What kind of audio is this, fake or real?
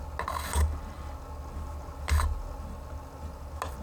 real